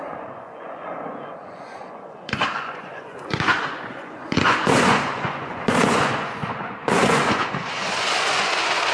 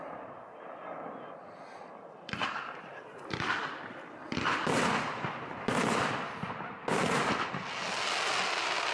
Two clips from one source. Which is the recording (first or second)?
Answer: second